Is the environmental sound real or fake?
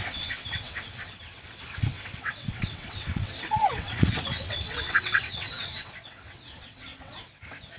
fake